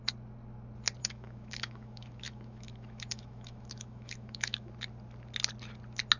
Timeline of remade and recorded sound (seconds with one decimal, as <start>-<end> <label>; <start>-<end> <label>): 0.0-1.0 recorded; 1.0-4.7 remade; 4.7-6.2 recorded